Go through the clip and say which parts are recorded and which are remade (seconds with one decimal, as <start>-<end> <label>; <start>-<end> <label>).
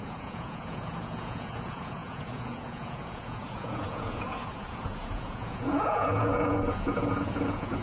0.0-7.8 remade